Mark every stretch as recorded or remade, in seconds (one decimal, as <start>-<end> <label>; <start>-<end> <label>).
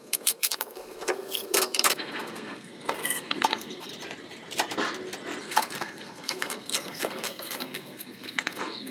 0.0-3.9 remade; 3.9-5.4 recorded; 5.4-8.9 remade